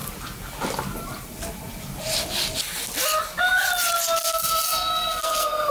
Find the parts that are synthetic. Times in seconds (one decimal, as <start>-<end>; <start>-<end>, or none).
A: 4.2-5.7

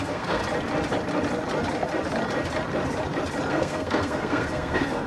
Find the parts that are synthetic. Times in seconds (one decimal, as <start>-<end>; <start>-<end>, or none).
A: 0.0-0.4; 3.5-5.1